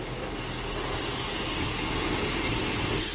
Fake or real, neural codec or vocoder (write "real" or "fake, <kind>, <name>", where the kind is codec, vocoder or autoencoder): real